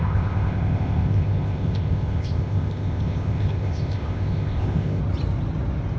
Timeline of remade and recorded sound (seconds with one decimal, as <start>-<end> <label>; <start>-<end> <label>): 0.0-5.0 remade; 5.0-6.0 recorded